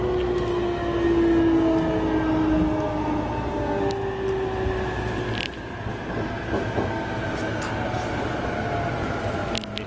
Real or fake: real